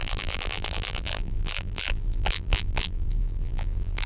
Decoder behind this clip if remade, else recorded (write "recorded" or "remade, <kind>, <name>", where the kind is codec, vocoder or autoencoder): remade, vocoder, BigVGAN v2